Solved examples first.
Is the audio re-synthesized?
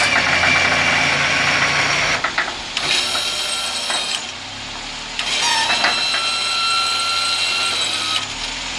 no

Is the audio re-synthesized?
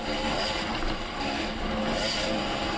no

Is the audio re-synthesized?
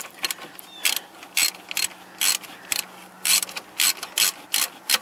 no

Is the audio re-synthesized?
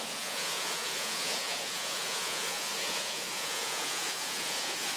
yes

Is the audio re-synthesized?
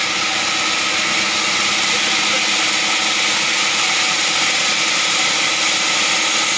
no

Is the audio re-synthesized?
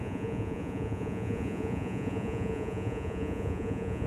yes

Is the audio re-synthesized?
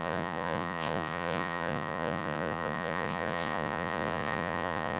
yes